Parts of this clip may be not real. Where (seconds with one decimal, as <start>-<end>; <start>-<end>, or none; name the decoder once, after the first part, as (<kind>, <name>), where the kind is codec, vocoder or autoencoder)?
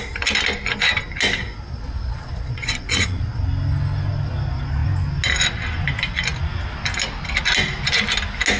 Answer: 1.4-3.4 (vocoder, Vocos)